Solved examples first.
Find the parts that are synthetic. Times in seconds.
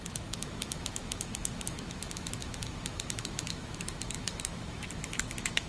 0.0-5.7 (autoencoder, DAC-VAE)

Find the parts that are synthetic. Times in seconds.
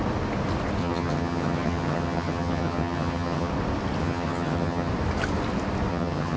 0.8-3.5 (vocoder, HiFi-GAN); 4.0-4.9; 5.9-6.4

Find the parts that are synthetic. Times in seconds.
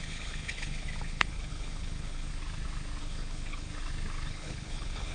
0.0-2.3 (codec, HILCodec); 3.0-3.7; 4.3-5.1